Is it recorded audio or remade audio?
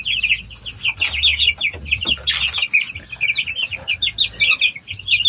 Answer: recorded